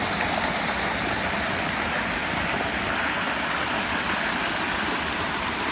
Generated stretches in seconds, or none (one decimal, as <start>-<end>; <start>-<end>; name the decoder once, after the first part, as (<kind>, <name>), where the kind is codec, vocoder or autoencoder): none